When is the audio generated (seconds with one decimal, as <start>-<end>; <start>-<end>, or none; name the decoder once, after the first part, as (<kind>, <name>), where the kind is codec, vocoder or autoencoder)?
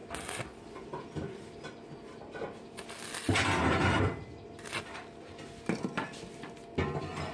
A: none